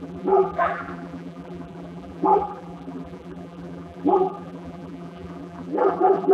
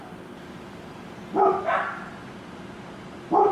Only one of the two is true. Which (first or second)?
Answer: second